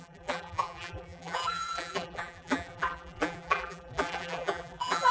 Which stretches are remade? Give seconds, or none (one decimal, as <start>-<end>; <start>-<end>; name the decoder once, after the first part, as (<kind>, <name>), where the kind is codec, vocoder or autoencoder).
0.0-5.1 (vocoder, BigVGAN v2)